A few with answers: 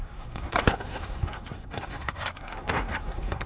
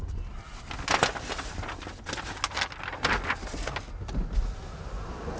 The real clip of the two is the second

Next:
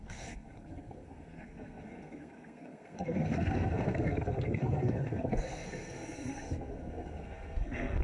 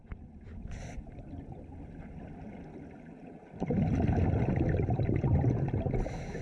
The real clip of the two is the second